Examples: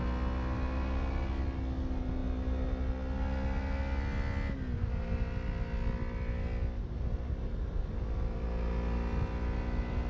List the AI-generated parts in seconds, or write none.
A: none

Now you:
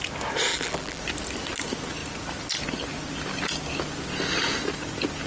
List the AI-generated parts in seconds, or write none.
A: 0.5-1.0 (vocoder, BigVGAN v2)

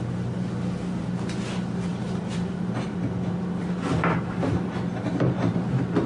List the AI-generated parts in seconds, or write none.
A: 1.9-2.5 (vocoder, BigVGAN v2)

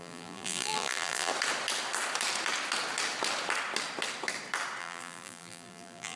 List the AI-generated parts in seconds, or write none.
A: 0.0-1.3 (vocoder, BigVGAN v2); 4.8-6.2